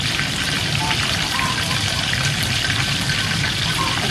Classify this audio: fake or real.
fake